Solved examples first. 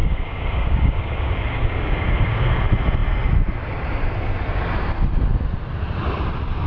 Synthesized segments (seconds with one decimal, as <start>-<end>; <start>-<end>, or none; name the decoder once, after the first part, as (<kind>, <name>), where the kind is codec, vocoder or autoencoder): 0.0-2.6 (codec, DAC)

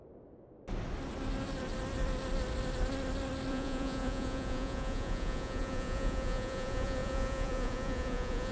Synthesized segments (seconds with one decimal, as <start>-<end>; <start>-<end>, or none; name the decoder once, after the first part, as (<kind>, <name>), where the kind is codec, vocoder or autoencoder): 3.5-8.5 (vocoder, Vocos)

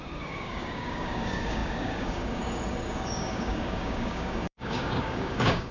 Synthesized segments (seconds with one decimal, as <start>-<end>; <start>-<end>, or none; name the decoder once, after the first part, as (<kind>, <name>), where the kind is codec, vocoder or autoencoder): 0.0-5.7 (codec, DAC)

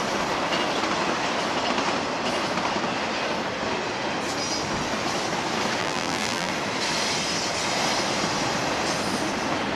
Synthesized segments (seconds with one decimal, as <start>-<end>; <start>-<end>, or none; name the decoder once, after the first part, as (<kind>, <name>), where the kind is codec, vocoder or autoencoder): 5.8-6.5 (vocoder, BigVGAN v2)

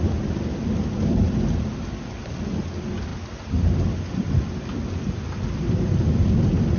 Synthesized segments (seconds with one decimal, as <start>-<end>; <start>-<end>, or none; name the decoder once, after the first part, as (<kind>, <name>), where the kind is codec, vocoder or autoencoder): none